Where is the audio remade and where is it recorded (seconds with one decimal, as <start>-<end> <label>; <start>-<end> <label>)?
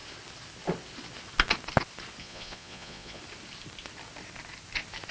0.0-2.2 recorded; 2.2-3.2 remade; 3.2-5.1 recorded